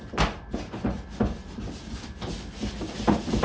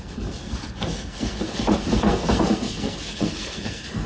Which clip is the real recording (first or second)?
first